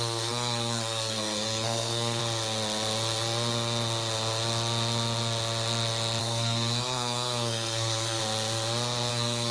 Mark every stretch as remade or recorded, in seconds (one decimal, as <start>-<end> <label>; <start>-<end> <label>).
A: 0.0-2.2 remade; 2.2-6.2 recorded; 6.2-8.2 remade; 8.2-9.1 recorded; 9.1-9.5 remade